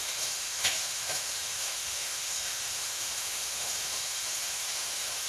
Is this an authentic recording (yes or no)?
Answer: no